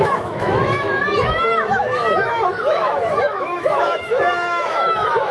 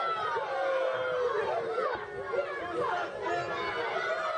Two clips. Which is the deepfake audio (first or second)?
first